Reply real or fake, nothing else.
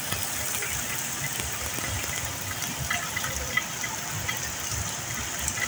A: real